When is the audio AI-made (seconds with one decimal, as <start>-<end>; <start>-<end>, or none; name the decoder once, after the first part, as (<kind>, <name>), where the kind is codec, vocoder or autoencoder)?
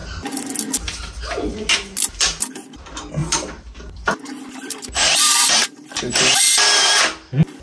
3.2-6.4 (vocoder, BigVGAN v2)